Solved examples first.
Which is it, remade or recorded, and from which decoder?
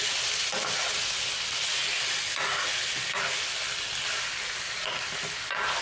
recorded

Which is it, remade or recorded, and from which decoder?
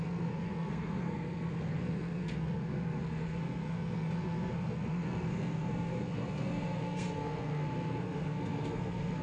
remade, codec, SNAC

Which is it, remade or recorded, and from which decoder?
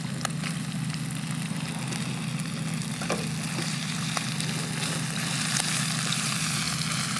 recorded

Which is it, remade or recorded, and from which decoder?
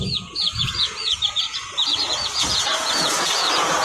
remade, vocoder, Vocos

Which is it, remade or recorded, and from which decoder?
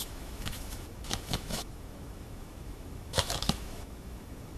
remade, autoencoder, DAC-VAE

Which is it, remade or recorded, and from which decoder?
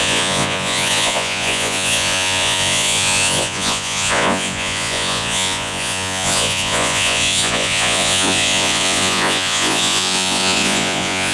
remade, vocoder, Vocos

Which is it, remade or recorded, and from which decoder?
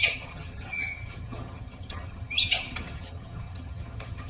remade, vocoder, HiFi-GAN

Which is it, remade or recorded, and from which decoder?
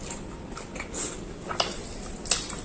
recorded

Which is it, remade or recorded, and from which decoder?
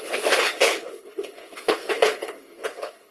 remade, codec, HILCodec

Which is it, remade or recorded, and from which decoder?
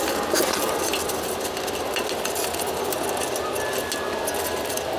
recorded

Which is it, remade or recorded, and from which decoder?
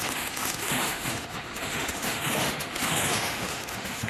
remade, autoencoder, DAC-VAE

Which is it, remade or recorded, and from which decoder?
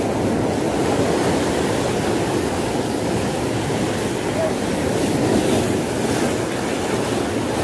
recorded